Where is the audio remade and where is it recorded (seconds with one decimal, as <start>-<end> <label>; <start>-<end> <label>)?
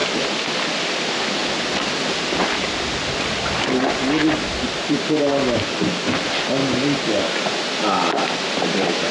0.0-0.7 recorded; 0.7-1.4 remade; 1.4-2.9 recorded; 2.9-5.3 remade; 5.3-5.8 recorded; 5.8-6.6 remade; 6.6-8.5 recorded; 8.5-9.1 remade